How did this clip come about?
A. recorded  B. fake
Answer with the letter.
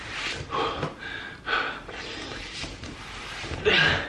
A